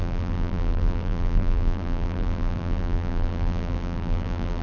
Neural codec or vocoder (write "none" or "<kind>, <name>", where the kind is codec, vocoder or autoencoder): vocoder, BigVGAN v2